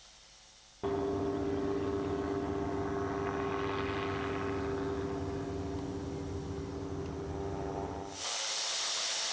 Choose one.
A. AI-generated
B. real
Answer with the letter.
B